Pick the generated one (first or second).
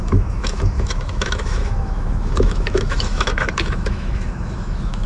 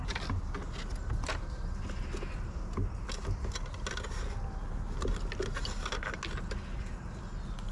first